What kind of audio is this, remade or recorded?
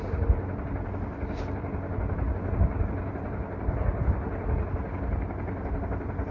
recorded